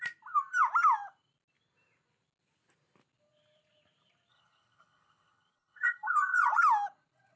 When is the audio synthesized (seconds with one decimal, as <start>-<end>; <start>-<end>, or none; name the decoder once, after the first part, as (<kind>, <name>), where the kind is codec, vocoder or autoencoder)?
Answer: 4.3-6.6 (vocoder, HiFi-GAN)